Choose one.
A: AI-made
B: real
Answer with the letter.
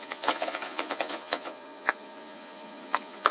A